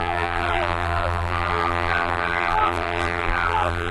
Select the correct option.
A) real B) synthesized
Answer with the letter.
B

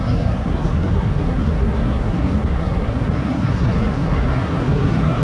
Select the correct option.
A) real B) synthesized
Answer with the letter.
B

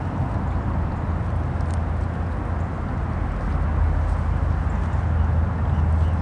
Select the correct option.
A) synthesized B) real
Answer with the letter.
B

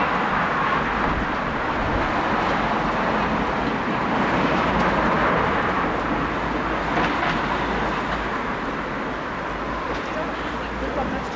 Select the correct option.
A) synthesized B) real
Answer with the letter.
B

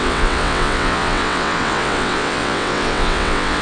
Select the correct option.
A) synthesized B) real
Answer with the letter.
A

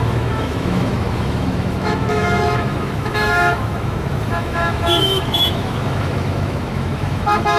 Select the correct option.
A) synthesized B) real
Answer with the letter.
A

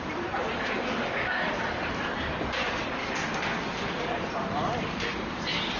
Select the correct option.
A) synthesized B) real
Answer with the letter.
A